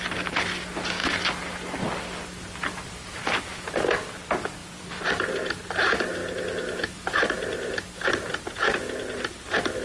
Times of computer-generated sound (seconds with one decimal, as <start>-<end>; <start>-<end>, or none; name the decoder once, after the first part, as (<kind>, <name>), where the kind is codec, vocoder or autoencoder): 4.6-5.6 (vocoder, BigVGAN v2)